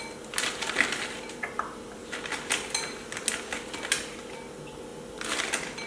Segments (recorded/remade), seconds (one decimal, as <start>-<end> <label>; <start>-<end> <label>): 0.0-5.9 recorded